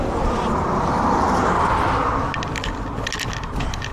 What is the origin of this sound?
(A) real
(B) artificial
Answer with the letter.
A